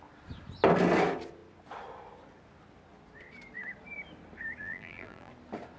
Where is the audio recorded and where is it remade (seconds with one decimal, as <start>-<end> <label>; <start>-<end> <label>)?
0.0-4.6 recorded; 4.6-5.3 remade; 5.3-5.8 recorded